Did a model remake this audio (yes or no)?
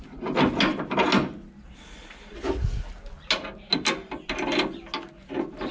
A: no